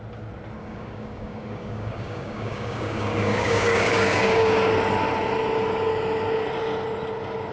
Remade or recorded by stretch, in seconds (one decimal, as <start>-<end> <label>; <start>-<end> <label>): 0.0-0.6 recorded; 0.6-4.7 remade; 4.7-7.5 recorded